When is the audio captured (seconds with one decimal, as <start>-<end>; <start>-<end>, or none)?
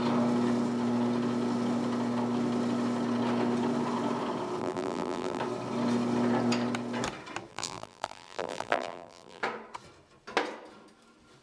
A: 0.0-4.6; 5.4-7.5; 9.4-11.4